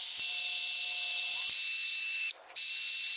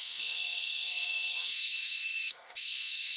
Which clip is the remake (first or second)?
second